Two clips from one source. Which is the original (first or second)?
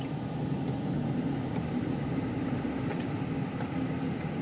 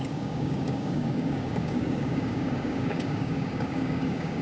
first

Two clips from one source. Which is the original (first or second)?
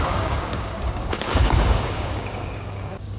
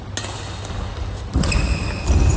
second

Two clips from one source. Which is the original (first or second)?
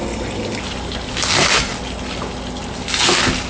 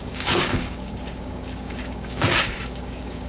first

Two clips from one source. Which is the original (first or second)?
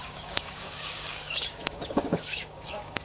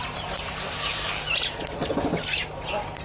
second